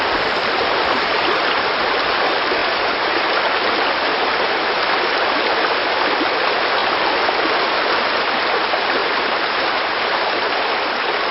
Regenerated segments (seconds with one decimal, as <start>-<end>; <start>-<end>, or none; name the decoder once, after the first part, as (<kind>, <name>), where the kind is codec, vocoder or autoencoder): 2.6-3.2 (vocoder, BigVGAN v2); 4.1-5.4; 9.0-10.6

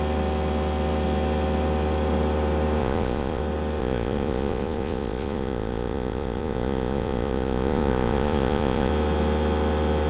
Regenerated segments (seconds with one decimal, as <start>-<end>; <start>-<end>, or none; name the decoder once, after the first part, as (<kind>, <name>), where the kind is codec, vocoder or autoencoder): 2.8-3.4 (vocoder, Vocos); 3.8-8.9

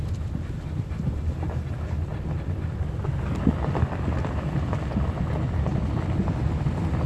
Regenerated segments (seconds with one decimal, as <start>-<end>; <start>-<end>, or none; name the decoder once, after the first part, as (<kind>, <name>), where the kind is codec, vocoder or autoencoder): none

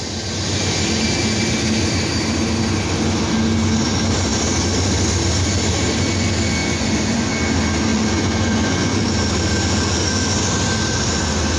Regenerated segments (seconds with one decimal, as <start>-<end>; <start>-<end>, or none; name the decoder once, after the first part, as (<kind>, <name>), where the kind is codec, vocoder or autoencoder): 6.6-7.3 (vocoder, Vocos); 7.9-9.1